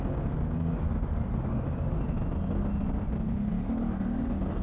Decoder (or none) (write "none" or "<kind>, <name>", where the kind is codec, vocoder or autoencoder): none